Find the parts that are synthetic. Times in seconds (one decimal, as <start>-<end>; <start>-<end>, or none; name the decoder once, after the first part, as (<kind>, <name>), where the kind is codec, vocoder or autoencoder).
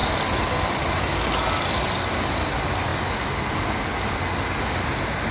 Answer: none